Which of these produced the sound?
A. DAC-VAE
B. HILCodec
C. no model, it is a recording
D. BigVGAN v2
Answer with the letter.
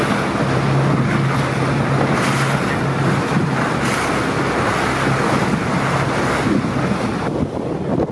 C